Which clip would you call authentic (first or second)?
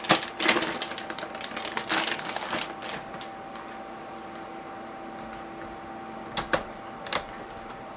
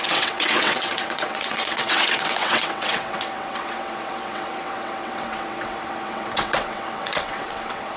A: first